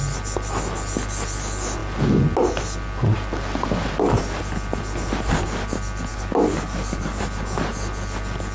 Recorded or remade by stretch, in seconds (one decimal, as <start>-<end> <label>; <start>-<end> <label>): 0.0-6.1 recorded; 6.1-7.2 remade; 7.2-8.5 recorded

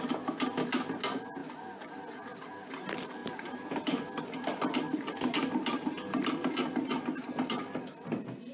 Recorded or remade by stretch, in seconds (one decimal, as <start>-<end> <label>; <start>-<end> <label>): 0.0-8.5 recorded

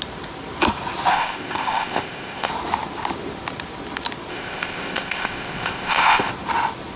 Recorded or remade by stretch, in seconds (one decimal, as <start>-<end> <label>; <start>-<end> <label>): 0.0-1.1 recorded; 1.1-2.5 remade; 2.5-4.3 recorded; 4.3-6.3 remade; 6.3-7.0 recorded

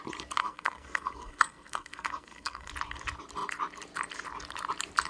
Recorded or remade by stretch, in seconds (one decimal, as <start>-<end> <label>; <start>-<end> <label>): 0.0-0.4 recorded; 0.4-2.7 remade; 2.7-5.1 recorded

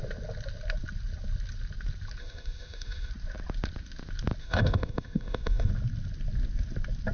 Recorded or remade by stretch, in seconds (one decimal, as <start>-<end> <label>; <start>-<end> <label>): 0.0-2.2 recorded; 2.2-3.1 remade; 3.1-4.4 recorded; 4.4-5.7 remade; 5.7-7.1 recorded

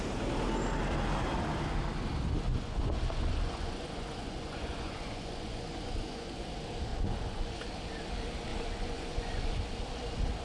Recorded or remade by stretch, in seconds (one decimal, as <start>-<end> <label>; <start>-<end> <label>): 0.0-2.5 recorded; 2.5-6.5 remade; 6.5-6.9 recorded; 6.9-7.6 remade; 7.6-8.5 recorded; 8.5-9.6 remade; 9.6-10.4 recorded